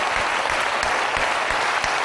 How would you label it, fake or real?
real